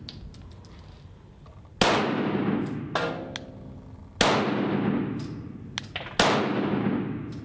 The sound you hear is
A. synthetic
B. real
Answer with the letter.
B